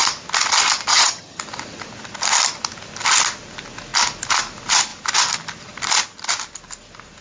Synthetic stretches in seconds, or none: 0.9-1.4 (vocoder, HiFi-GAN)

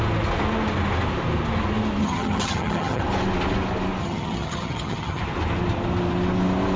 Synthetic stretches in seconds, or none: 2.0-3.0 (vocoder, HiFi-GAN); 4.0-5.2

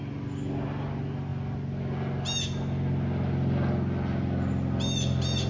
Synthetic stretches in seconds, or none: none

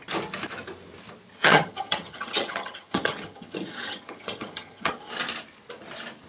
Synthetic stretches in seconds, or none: 1.3-5.1 (vocoder, HiFi-GAN)

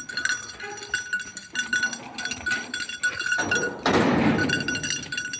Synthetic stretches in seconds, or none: none

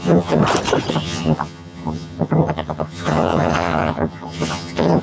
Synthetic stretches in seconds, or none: 0.0-0.4 (vocoder, HiFi-GAN); 0.9-5.0

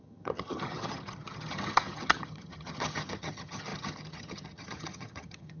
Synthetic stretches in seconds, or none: 0.0-5.6 (vocoder, HiFi-GAN)